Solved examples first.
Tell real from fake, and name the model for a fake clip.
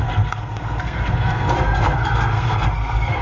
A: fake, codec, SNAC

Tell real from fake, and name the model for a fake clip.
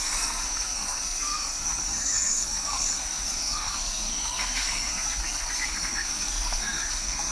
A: fake, codec, SNAC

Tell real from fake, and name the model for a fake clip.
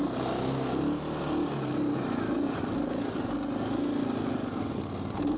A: real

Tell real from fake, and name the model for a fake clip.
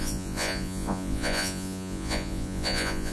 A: fake, vocoder, Vocos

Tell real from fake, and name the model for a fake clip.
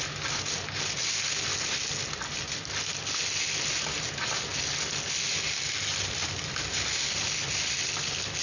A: real